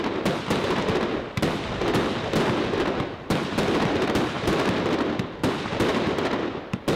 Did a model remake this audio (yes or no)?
no